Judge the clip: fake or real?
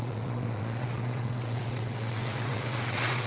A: fake